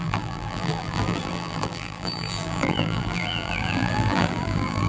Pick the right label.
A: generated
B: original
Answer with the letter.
A